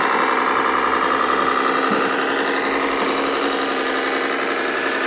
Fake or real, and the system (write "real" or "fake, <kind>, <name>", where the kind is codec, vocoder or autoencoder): real